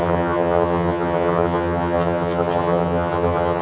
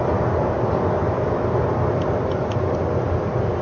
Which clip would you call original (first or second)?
second